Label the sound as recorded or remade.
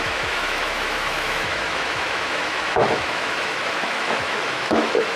remade